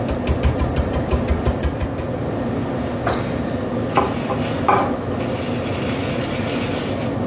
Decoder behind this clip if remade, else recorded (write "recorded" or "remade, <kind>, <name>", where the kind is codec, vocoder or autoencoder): recorded